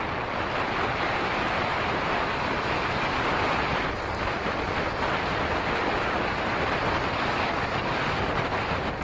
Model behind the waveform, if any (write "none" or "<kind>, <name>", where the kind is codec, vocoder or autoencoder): none